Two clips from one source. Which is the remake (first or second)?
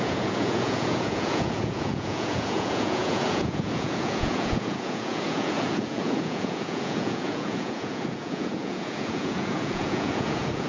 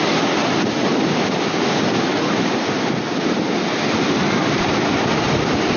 first